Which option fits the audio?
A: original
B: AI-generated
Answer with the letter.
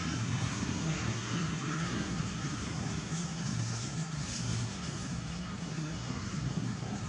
B